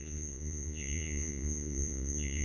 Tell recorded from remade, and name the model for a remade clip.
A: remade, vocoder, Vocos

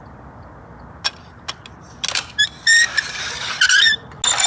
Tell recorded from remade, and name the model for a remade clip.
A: recorded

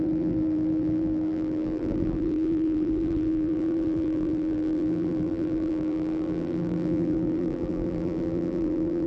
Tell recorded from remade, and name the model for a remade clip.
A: remade, vocoder, BigVGAN v2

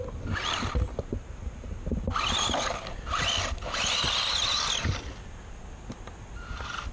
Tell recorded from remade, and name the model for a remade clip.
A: recorded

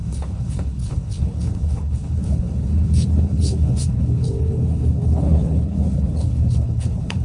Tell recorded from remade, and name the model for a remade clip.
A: remade, codec, HILCodec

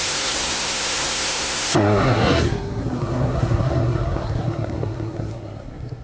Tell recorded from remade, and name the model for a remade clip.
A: remade, codec, SNAC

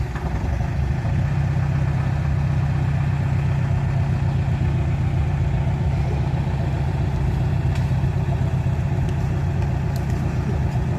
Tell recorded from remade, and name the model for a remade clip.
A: recorded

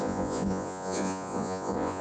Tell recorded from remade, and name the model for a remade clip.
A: remade, vocoder, Vocos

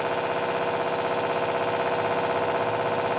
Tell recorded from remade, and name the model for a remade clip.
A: recorded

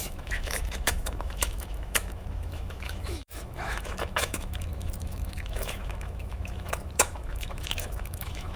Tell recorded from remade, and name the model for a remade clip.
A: remade, autoencoder, DAC-VAE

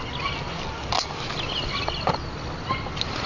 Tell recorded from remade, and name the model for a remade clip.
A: recorded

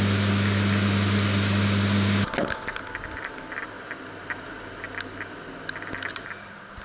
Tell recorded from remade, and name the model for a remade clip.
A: recorded